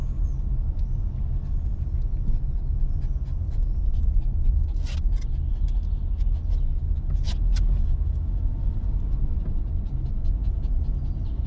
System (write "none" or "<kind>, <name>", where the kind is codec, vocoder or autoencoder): none